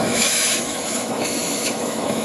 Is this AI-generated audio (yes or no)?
yes